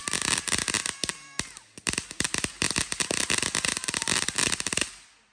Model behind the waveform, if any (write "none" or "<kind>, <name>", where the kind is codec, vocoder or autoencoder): none